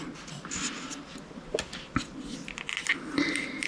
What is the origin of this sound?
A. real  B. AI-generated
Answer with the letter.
A